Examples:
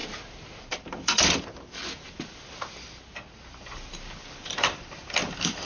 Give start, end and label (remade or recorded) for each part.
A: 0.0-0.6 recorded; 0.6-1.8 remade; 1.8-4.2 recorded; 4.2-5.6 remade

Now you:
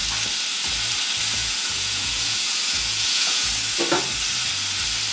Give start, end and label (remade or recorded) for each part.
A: 0.0-1.4 recorded; 1.4-3.5 remade; 3.5-5.1 recorded

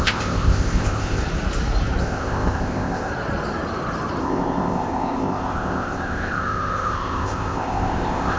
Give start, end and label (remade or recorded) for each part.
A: 0.0-1.2 remade; 1.2-2.0 recorded; 2.0-3.1 remade; 3.1-4.2 recorded; 4.2-8.4 remade

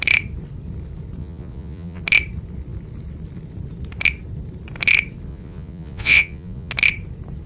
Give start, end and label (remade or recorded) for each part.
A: 0.0-1.2 recorded; 1.2-2.0 remade; 2.0-5.3 recorded; 5.3-6.7 remade; 6.7-7.5 recorded

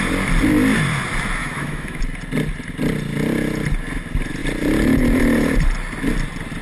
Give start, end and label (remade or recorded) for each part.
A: 0.0-1.4 recorded; 1.4-2.0 remade; 2.0-6.6 recorded

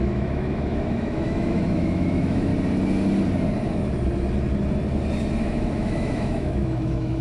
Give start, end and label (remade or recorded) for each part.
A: 0.0-2.5 remade; 2.5-5.4 recorded; 5.4-7.2 remade

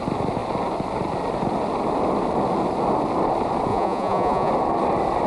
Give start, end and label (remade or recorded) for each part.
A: 0.0-3.7 recorded; 3.7-4.5 remade; 4.5-5.3 recorded